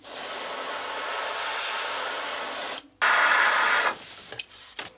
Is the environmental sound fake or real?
real